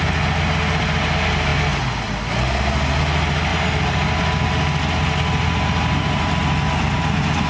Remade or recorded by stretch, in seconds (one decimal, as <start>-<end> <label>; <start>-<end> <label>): 0.0-7.5 recorded